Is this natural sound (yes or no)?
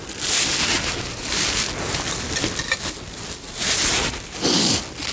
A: yes